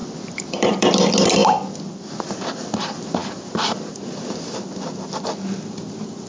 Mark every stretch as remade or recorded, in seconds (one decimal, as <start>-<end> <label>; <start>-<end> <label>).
0.0-0.5 recorded; 0.5-1.4 remade; 1.4-2.3 recorded; 2.3-6.3 remade